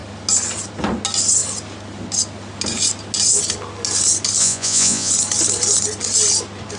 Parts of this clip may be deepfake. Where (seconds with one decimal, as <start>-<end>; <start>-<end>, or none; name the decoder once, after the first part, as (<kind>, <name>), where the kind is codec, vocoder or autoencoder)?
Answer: 4.4-5.1 (vocoder, Vocos)